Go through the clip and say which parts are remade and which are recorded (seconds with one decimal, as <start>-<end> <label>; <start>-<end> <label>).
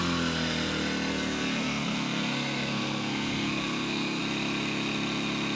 0.0-1.1 recorded; 1.1-4.2 remade; 4.2-5.6 recorded